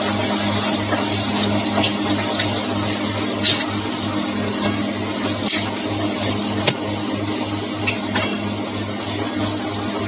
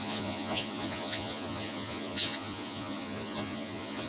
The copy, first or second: second